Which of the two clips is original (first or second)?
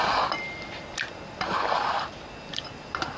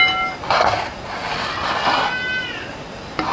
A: second